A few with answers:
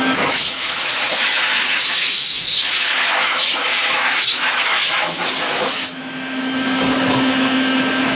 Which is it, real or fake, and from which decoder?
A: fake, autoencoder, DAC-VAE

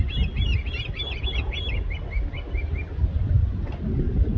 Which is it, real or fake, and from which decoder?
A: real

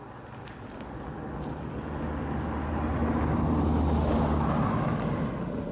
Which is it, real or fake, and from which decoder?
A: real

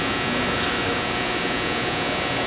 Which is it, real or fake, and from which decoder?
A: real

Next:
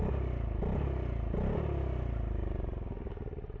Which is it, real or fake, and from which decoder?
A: real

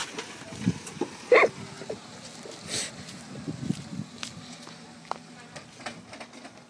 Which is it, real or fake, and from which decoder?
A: real